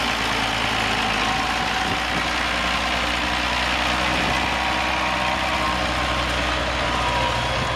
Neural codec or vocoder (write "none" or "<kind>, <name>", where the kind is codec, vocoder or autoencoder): none